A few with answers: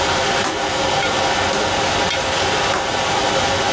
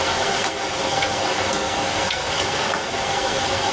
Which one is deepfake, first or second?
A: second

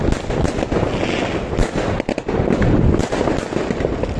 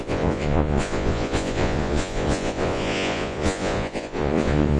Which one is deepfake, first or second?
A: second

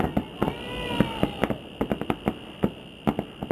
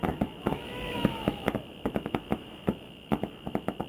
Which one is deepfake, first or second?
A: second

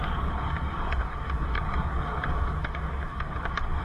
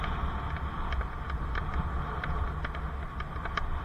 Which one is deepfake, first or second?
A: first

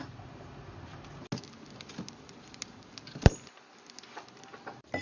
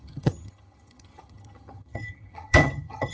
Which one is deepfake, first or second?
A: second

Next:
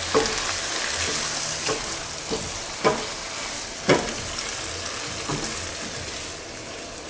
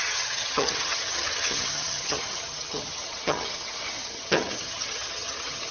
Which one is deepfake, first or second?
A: second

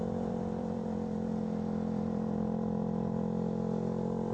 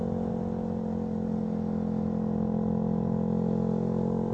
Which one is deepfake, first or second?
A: first